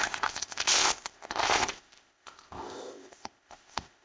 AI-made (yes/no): yes